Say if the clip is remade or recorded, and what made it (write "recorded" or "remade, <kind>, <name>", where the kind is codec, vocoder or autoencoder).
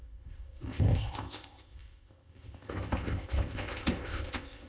remade, codec, ZipCodec